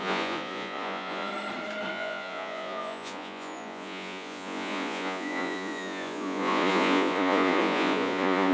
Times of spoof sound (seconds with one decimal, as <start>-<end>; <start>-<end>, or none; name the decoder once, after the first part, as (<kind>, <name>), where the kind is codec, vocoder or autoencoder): 0.0-1.3 (vocoder, Vocos); 1.9-8.5